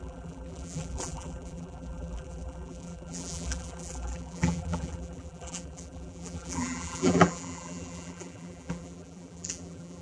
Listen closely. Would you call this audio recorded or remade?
remade